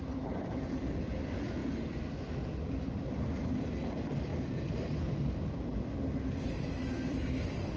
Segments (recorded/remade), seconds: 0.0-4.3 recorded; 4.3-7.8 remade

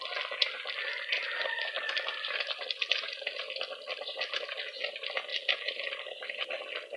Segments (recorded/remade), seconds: 0.0-2.1 recorded; 2.1-3.5 remade; 3.5-7.0 recorded

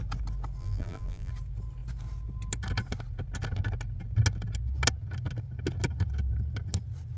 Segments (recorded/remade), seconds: 0.0-0.6 recorded; 0.6-1.3 remade; 1.3-7.2 recorded

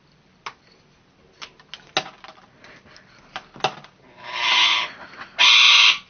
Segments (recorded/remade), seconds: 0.0-6.1 recorded

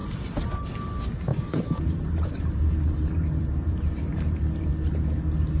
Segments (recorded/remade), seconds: 0.0-0.5 remade; 0.5-1.3 recorded; 1.3-4.7 remade; 4.7-5.6 recorded

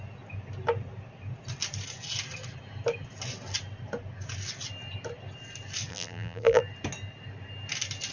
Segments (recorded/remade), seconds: 0.0-5.9 recorded; 5.9-6.6 remade; 6.6-8.1 recorded